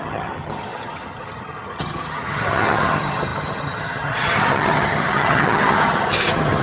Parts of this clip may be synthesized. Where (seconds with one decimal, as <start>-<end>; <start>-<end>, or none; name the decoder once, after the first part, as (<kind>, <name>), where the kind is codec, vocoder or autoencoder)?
0.0-6.6 (vocoder, HiFi-GAN)